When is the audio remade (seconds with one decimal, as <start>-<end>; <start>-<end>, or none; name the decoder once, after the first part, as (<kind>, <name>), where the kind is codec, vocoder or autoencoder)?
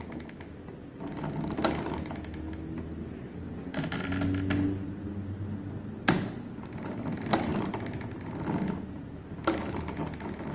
none